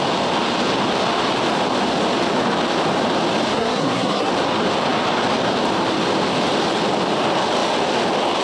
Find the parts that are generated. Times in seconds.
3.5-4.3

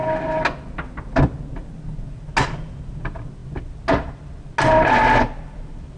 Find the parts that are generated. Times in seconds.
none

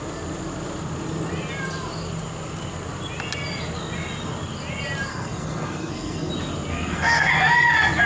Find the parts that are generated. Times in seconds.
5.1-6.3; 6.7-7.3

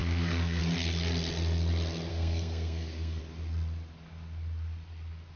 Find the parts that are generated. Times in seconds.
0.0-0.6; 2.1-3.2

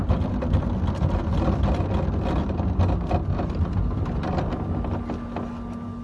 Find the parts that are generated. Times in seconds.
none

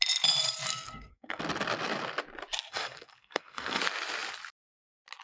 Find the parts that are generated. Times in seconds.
0.7-1.4; 2.7-3.8

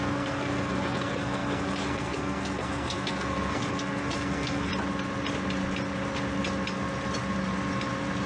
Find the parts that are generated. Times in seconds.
0.0-4.7

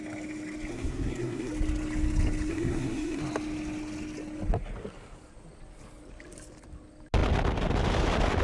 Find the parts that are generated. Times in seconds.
0.7-1.5; 2.5-3.2